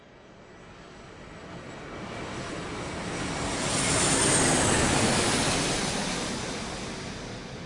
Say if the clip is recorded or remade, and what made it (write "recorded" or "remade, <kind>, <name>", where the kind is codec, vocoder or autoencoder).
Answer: recorded